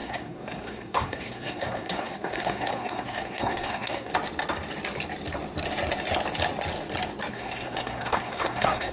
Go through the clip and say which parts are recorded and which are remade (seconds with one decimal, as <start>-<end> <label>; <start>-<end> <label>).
0.0-4.1 remade; 4.1-7.3 recorded; 7.3-8.9 remade